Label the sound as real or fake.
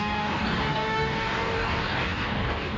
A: fake